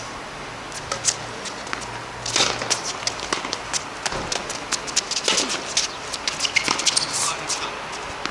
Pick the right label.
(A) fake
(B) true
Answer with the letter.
B